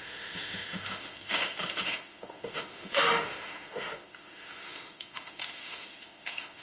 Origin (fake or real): fake